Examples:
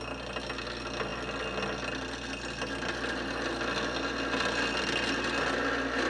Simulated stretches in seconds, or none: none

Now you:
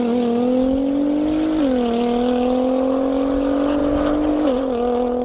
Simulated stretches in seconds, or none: none

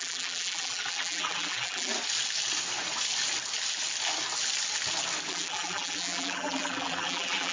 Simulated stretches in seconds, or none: 0.0-1.9 (vocoder, BigVGAN v2); 5.3-7.5

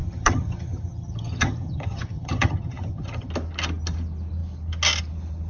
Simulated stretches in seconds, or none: 0.0-3.3 (vocoder, HiFi-GAN)

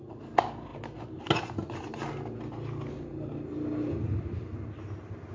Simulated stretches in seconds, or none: none

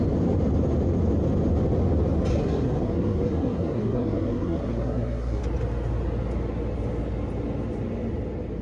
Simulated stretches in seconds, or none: 2.3-5.4 (codec, SNAC)

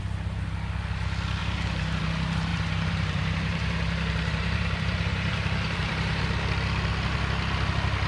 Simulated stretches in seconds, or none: 1.4-2.0 (vocoder, BigVGAN v2); 2.5-6.2